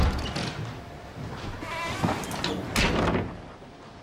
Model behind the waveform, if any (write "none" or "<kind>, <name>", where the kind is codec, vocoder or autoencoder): none